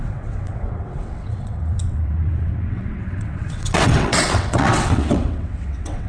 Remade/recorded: remade